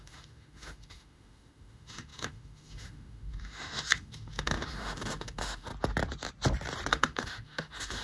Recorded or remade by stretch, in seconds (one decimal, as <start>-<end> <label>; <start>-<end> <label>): 0.0-5.7 remade; 5.7-6.9 recorded; 6.9-8.0 remade